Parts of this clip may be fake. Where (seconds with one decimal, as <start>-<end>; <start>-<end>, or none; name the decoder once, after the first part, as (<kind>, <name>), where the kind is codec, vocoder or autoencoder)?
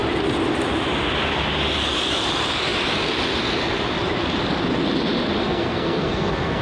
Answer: 5.4-6.6 (codec, SNAC)